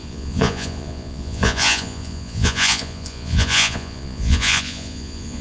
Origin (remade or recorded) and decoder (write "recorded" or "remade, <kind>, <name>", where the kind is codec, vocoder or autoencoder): remade, vocoder, Vocos